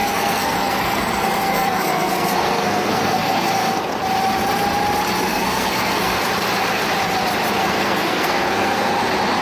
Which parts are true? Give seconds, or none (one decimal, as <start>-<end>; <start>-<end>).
4.0-5.3; 6.2-7.6; 8.9-9.4